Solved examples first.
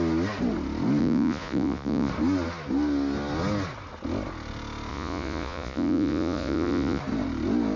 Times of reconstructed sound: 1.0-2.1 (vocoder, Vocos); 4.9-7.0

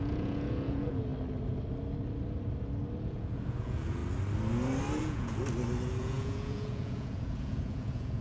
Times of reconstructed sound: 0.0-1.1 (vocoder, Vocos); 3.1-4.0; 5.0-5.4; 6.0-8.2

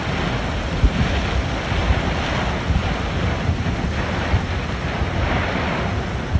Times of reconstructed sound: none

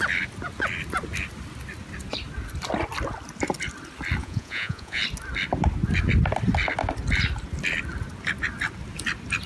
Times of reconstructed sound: 4.2-5.0 (vocoder, Vocos)

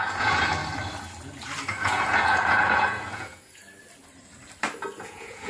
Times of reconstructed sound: 0.0-0.6 (vocoder, Vocos); 1.8-3.6; 5.0-5.5

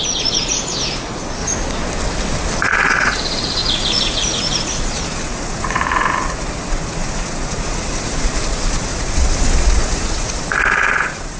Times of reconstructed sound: 0.0-1.4 (vocoder, Vocos); 2.7-11.4